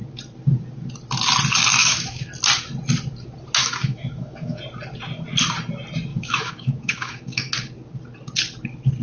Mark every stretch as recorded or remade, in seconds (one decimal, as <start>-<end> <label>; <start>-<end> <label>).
0.0-1.8 recorded; 1.8-2.3 remade; 2.3-3.6 recorded; 3.6-4.6 remade; 4.6-6.1 recorded; 6.1-7.5 remade; 7.5-9.0 recorded